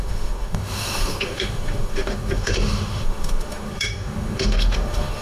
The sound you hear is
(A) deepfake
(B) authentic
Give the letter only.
A